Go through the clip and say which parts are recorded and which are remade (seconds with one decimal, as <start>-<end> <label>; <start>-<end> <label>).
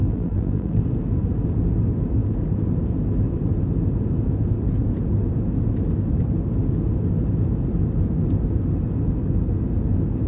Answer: 0.0-0.8 remade; 0.8-10.3 recorded